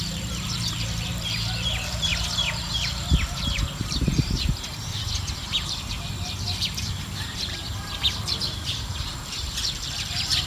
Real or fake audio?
fake